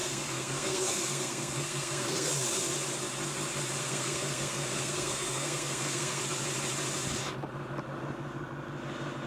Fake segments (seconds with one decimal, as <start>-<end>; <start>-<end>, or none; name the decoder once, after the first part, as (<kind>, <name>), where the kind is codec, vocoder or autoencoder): 0.0-2.3 (codec, SNAC); 3.8-6.2